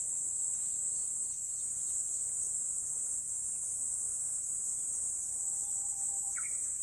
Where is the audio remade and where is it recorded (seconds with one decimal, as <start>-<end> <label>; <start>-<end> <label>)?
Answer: 0.0-1.0 recorded; 1.0-3.3 remade; 3.3-4.1 recorded; 4.1-5.0 remade; 5.0-5.6 recorded; 5.6-6.8 remade